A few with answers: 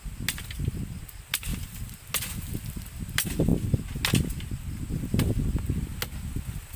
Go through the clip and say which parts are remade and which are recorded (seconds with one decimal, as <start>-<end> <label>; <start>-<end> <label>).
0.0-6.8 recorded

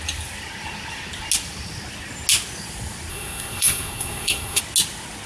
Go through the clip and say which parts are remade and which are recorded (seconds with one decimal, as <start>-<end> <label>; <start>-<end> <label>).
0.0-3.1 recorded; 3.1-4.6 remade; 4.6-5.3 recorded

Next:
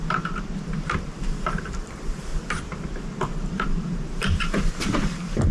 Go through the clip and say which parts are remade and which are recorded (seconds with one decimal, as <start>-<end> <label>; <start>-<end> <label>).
0.0-2.3 remade; 2.3-3.5 recorded; 3.5-5.5 remade

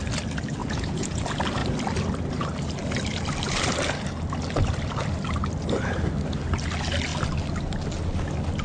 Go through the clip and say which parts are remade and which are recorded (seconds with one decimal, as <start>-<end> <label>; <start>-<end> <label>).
0.0-0.6 recorded; 0.6-1.2 remade; 1.2-8.6 recorded

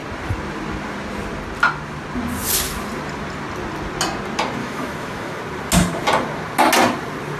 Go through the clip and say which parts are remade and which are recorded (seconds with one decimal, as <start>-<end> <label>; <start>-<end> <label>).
0.0-4.6 recorded; 4.6-5.4 remade; 5.4-7.4 recorded

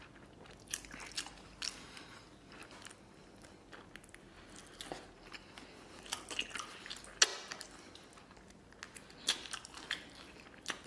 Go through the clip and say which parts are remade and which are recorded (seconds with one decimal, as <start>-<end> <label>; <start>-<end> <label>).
0.0-10.9 recorded